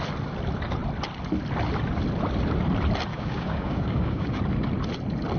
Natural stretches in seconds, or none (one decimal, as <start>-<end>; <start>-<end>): 0.0-3.1; 4.4-5.4

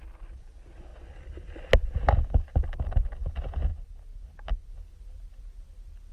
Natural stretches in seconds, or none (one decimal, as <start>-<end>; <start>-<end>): 0.0-6.1

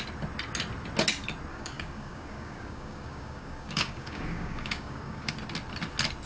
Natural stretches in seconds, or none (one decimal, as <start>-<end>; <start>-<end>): 0.0-1.5; 5.3-6.3

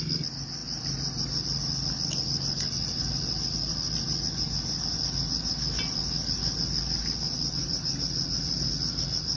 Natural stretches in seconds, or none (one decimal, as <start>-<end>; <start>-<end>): 0.0-9.4